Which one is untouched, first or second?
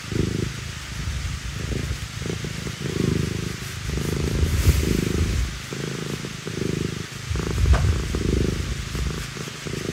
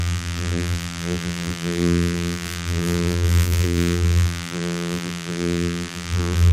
first